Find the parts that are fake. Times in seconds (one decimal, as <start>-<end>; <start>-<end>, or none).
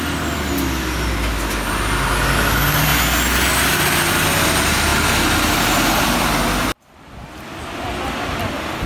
none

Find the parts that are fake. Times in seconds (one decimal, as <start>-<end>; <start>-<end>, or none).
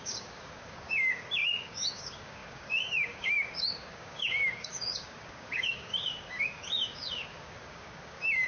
0.0-8.5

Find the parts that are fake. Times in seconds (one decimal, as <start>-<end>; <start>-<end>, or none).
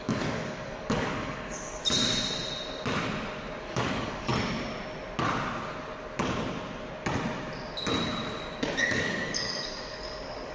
0.0-1.8; 3.6-4.3; 8.8-10.5